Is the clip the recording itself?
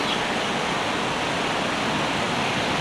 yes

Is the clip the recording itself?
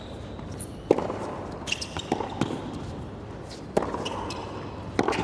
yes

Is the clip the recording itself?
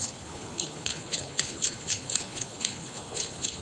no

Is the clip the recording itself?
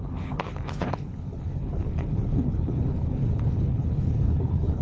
no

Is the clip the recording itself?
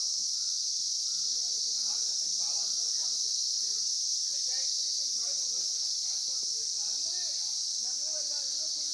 yes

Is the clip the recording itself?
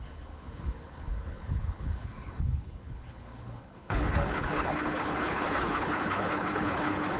no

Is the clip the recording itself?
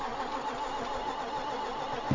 yes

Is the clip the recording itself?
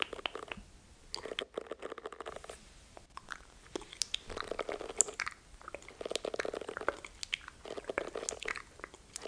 yes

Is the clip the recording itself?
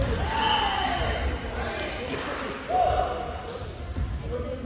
yes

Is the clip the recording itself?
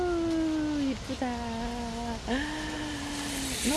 yes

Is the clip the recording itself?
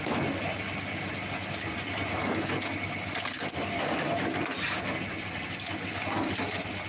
yes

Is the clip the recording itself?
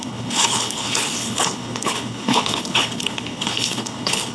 no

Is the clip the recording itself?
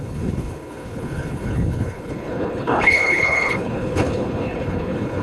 no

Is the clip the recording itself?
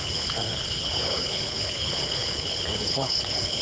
no